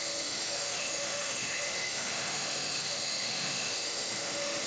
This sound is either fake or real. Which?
fake